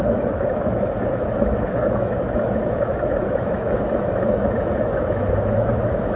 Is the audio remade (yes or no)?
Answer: yes